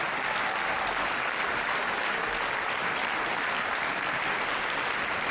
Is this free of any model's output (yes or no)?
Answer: yes